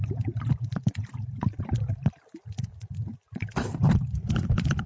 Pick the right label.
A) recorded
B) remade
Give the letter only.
A